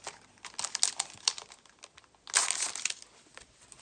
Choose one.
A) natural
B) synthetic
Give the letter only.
A